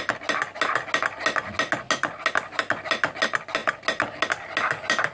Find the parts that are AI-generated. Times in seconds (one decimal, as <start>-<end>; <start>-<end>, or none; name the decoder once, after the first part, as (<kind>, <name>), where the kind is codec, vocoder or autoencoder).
none